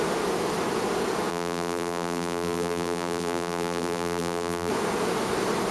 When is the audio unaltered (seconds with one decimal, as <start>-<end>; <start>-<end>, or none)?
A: 0.0-1.3; 4.7-5.7